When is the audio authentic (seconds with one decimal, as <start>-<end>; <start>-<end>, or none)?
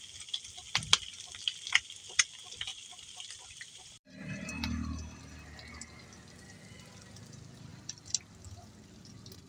0.0-2.7; 5.2-9.5